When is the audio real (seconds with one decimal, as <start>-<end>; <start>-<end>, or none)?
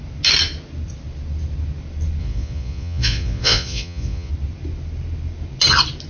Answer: 0.0-2.2; 4.3-6.1